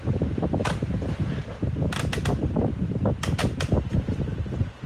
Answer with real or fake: real